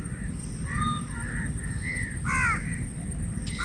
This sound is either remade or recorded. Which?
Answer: recorded